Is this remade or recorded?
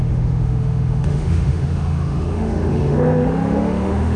remade